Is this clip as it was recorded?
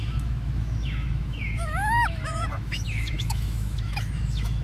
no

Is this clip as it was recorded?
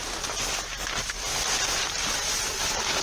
yes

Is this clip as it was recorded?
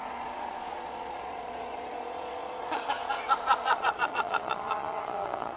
no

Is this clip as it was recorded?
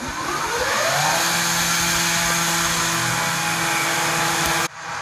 yes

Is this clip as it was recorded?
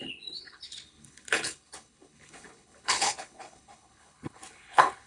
no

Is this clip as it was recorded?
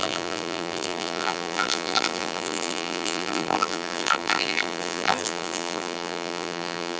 no